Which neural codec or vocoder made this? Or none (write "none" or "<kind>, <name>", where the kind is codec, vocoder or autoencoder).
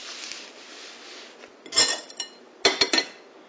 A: none